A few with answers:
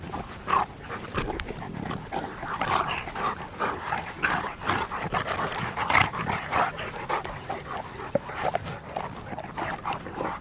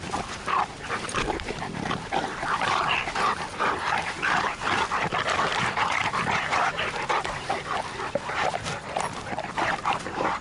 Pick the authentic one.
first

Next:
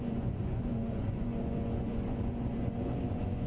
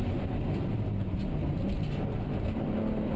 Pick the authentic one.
second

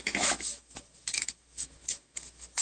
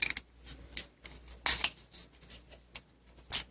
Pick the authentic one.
second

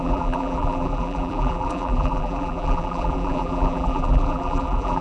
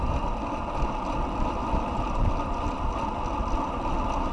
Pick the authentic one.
second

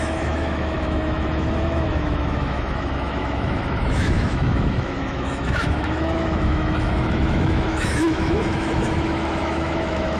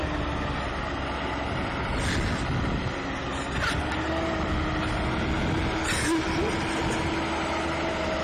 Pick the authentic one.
second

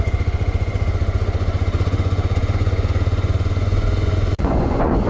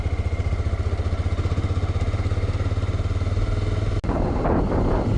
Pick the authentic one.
second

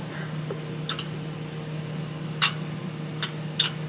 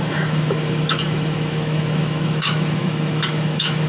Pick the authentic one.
first